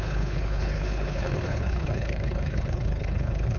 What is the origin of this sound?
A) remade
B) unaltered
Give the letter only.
A